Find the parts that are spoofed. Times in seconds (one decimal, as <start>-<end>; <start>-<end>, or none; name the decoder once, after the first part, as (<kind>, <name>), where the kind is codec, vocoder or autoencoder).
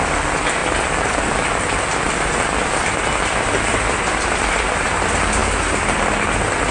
none